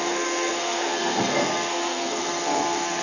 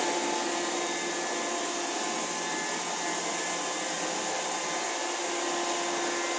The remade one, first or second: first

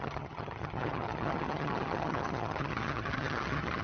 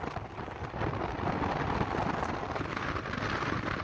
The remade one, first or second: first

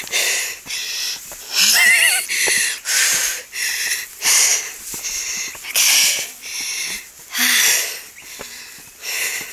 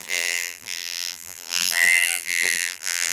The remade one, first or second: second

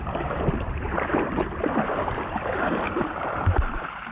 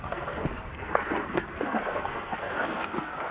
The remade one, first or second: second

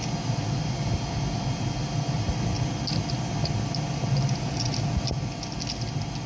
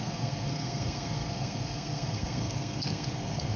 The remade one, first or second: second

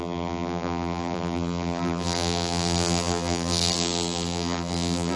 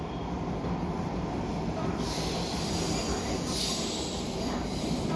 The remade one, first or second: first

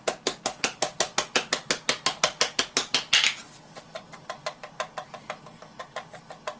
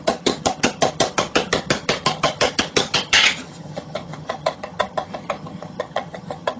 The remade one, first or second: second